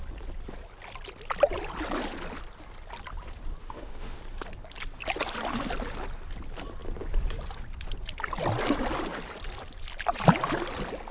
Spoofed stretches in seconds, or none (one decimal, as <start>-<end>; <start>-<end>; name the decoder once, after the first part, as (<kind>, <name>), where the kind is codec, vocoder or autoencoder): 3.6-4.2 (autoencoder, DAC-VAE)